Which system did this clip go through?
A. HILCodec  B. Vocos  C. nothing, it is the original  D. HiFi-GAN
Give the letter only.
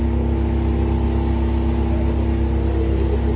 C